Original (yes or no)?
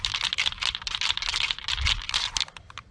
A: yes